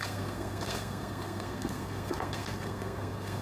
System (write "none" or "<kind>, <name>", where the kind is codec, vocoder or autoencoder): codec, SNAC